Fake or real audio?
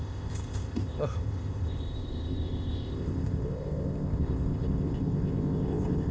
fake